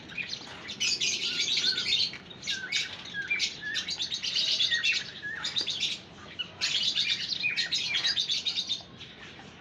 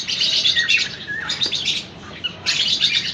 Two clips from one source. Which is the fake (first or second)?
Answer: second